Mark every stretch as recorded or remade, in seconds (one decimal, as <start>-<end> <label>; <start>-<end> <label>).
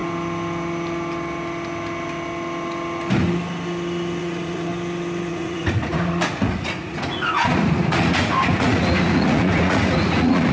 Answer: 0.0-4.2 recorded; 4.2-4.7 remade; 4.7-5.3 recorded; 5.3-10.5 remade